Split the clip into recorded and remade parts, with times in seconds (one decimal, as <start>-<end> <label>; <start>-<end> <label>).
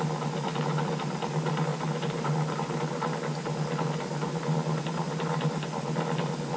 0.0-6.6 recorded